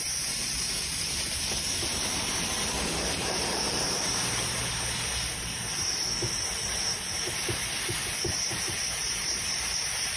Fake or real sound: fake